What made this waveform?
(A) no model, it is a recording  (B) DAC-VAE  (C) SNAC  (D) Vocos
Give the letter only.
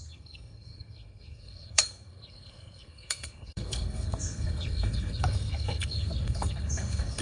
C